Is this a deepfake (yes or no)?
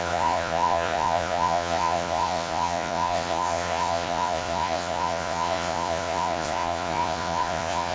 yes